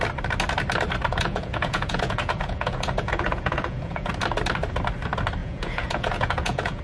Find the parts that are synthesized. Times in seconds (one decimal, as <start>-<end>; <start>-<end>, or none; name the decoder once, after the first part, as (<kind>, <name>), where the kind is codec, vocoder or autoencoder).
1.1-4.1 (vocoder, Vocos); 5.4-6.8